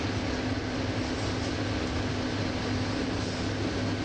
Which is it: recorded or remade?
recorded